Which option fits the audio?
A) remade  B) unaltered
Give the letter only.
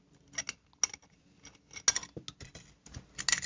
B